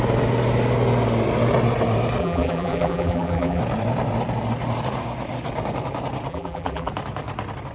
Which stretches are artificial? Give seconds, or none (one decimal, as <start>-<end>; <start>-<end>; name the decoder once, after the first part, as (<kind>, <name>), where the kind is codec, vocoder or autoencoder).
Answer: 2.2-3.6 (vocoder, BigVGAN v2); 6.3-6.9